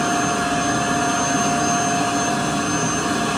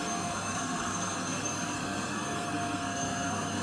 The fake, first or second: second